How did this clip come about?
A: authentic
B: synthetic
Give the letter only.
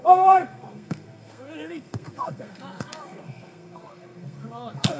B